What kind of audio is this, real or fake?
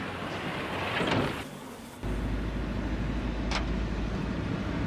real